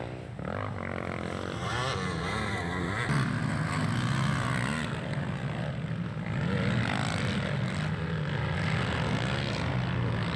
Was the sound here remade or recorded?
recorded